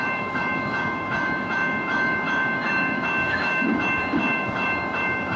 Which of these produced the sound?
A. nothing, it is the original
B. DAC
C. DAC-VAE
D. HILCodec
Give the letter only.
C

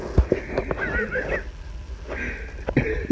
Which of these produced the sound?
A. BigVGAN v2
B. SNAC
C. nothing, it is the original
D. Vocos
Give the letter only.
C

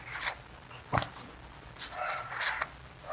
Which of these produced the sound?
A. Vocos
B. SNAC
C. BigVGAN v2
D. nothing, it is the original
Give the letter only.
D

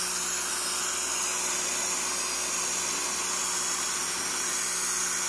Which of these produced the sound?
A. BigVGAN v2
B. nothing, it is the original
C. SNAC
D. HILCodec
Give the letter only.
B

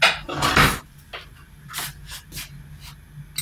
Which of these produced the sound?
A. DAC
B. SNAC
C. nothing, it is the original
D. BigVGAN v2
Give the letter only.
C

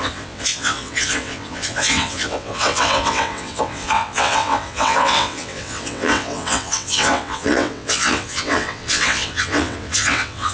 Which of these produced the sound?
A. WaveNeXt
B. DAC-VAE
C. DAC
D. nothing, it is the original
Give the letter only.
A